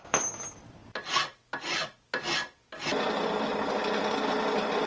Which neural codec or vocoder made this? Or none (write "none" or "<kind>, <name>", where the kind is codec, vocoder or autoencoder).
none